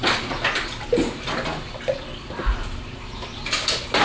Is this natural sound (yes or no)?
yes